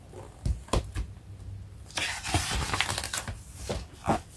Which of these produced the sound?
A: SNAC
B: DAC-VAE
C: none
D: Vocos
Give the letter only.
C